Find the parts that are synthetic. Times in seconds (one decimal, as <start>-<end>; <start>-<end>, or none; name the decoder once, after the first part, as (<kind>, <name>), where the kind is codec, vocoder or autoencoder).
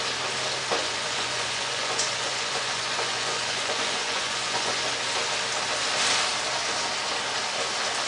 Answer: 0.8-4.9 (vocoder, Vocos)